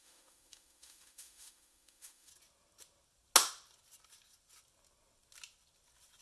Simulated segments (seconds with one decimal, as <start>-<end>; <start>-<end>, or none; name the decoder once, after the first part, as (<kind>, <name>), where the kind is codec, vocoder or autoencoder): 0.0-2.3 (autoencoder, DAC-VAE)